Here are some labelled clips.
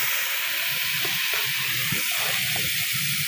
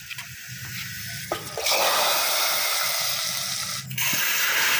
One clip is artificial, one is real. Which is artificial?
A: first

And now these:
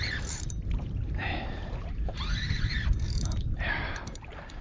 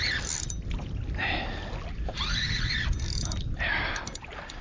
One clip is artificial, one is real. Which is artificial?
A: first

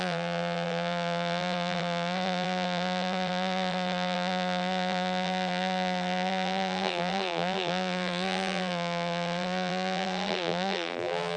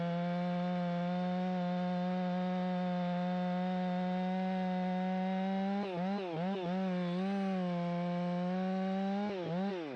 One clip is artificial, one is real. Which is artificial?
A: first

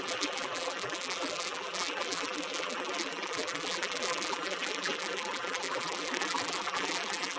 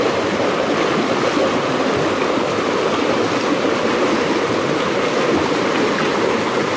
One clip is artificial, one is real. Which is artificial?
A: first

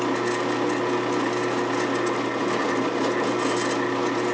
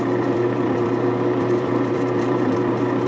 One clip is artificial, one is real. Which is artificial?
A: second